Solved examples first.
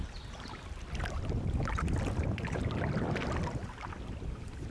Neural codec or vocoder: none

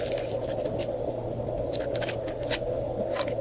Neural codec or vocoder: none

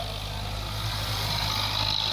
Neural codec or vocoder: none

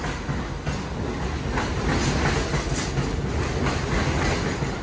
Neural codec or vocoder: none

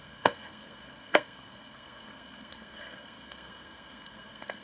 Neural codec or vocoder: codec, SNAC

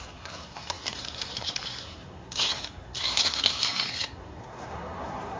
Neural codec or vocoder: codec, SNAC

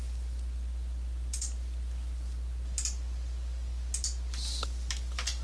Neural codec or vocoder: none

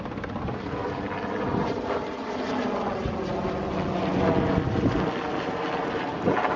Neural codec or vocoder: none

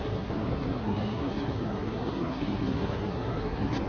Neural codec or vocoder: codec, SNAC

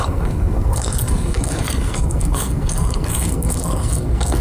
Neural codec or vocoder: codec, SNAC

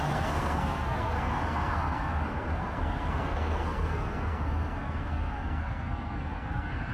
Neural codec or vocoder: codec, SNAC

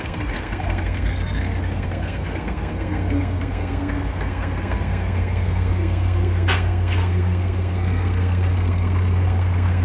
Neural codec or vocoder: codec, SNAC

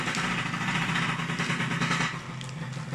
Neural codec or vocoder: none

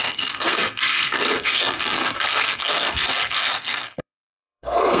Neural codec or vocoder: codec, SNAC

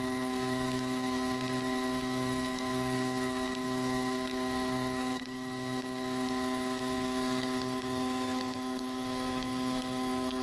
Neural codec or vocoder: codec, SNAC